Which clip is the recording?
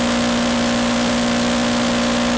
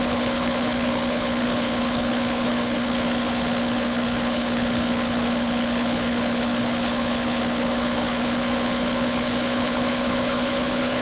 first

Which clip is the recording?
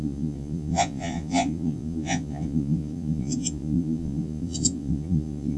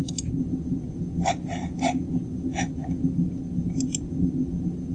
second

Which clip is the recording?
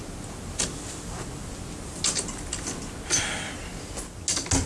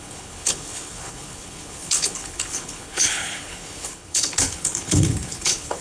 first